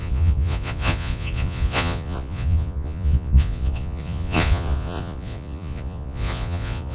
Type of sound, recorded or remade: remade